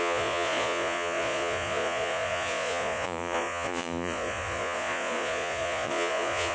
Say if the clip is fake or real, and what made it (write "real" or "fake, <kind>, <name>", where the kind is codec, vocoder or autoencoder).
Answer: fake, vocoder, Vocos